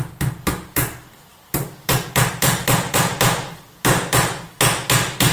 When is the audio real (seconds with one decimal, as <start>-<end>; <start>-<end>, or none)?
0.0-1.3; 4.5-5.3